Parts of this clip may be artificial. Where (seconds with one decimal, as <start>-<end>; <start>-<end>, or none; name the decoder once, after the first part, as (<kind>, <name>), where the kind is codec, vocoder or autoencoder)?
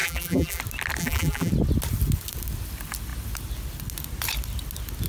0.0-0.6 (vocoder, BigVGAN v2); 1.0-1.5